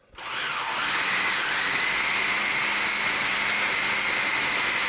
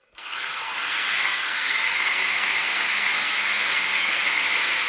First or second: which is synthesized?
second